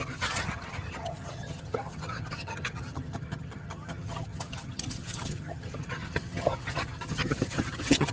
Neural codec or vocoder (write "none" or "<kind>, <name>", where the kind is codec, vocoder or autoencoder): vocoder, HiFi-GAN